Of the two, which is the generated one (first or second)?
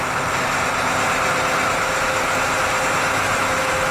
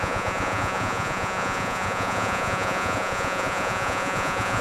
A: second